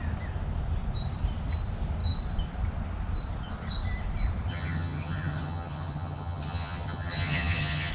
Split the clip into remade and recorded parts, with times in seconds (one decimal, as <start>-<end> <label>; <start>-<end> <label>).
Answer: 0.0-4.5 recorded; 4.5-7.9 remade